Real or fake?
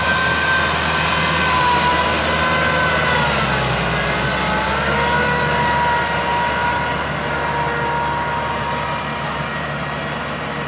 real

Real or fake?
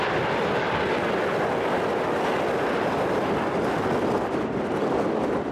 real